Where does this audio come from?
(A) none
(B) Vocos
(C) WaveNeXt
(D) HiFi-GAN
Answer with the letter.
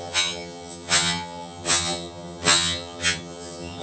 D